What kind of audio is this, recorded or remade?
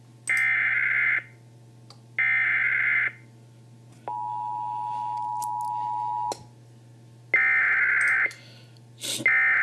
recorded